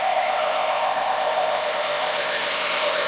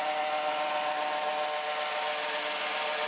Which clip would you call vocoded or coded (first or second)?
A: first